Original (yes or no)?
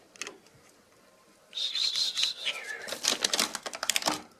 yes